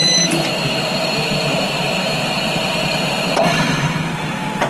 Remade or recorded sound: remade